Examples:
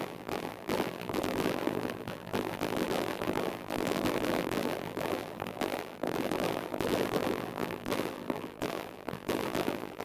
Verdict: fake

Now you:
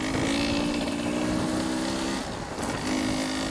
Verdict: real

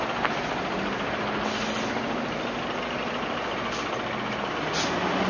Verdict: real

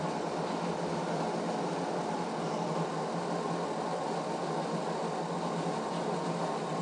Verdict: real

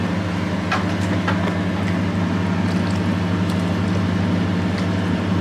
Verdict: real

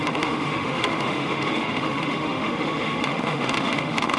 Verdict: fake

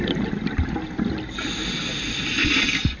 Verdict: real